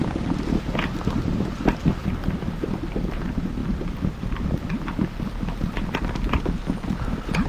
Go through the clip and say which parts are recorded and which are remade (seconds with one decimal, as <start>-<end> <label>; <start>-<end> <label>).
0.0-7.5 recorded